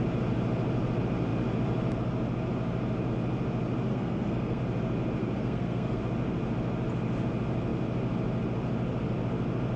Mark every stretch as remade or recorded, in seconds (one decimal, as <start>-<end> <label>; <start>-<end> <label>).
0.0-3.9 recorded; 3.9-4.6 remade; 4.6-5.2 recorded; 5.2-6.0 remade; 6.0-9.8 recorded